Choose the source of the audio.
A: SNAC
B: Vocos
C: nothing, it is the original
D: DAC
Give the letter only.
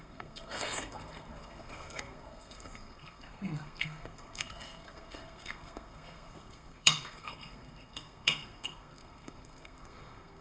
A